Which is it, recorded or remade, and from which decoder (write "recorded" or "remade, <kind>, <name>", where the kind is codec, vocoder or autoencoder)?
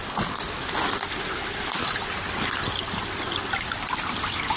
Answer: recorded